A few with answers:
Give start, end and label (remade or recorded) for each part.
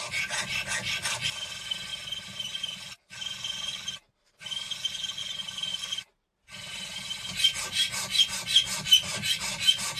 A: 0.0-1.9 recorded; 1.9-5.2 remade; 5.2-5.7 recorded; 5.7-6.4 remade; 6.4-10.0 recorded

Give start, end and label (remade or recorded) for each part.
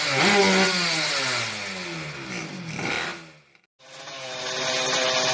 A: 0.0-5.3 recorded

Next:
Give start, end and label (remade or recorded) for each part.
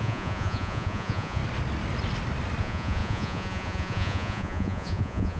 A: 0.0-1.4 remade; 1.4-2.6 recorded; 2.6-5.4 remade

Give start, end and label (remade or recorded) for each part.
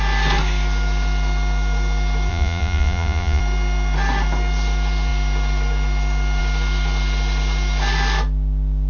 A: 0.0-2.3 recorded; 2.3-3.4 remade; 3.4-8.9 recorded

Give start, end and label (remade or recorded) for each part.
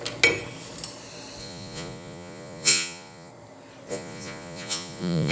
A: 0.0-1.4 recorded; 1.4-3.3 remade; 3.3-3.9 recorded; 3.9-5.3 remade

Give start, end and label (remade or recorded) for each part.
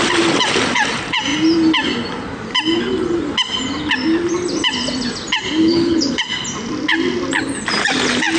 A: 0.0-5.6 recorded; 5.6-6.2 remade; 6.2-8.4 recorded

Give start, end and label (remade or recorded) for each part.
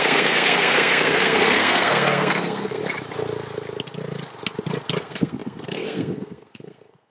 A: 0.0-2.8 remade; 2.8-5.0 recorded; 5.0-7.1 remade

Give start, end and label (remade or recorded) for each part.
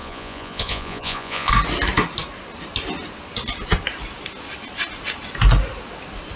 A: 0.0-1.5 remade; 1.5-6.4 recorded